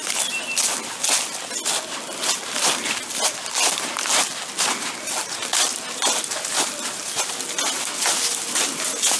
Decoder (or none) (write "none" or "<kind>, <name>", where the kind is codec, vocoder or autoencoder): none